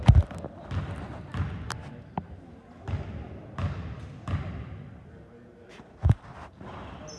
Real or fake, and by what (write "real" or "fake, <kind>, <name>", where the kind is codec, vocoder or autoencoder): real